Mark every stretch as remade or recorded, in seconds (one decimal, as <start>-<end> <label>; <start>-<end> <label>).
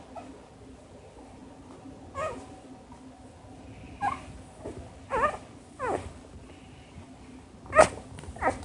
0.0-8.6 recorded